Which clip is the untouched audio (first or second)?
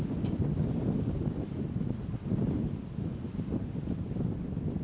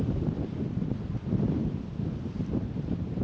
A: first